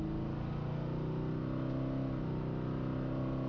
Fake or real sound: real